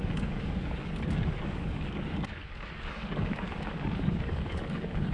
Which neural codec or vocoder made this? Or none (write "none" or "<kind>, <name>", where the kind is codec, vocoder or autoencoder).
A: codec, DAC